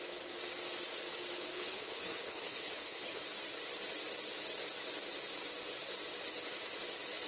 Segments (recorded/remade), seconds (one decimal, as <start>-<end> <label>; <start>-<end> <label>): 0.0-1.5 recorded; 1.5-3.2 remade; 3.2-7.3 recorded